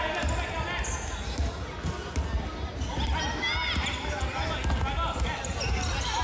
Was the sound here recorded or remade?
recorded